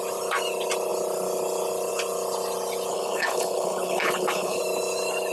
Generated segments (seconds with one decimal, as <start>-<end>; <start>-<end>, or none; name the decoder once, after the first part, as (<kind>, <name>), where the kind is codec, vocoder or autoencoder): 2.9-4.6 (codec, HILCodec)

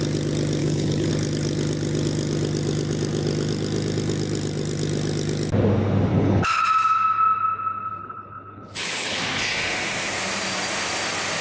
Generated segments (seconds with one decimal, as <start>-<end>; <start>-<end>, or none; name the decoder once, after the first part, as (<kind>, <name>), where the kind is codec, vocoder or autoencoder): 0.6-1.1 (codec, HILCodec); 6.1-6.6; 8.0-9.2